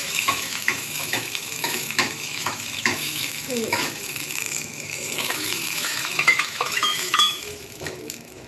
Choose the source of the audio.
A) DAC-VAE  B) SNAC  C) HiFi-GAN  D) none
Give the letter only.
A